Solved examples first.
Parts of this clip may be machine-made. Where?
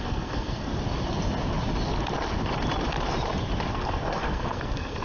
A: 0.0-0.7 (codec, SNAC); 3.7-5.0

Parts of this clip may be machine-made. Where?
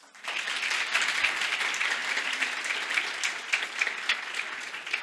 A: none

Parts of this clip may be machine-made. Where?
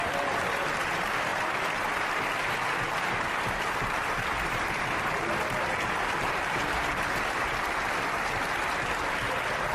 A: none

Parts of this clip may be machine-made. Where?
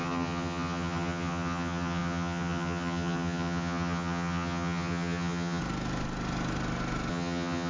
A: 0.0-5.6 (vocoder, HiFi-GAN); 7.1-7.7